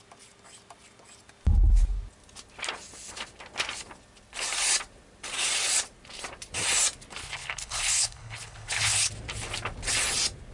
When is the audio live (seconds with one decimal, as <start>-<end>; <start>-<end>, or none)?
0.0-7.2; 9.1-10.5